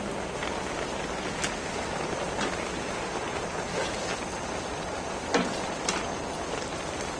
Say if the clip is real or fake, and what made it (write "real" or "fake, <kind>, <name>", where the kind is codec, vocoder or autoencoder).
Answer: real